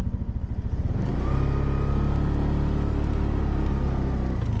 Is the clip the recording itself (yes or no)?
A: yes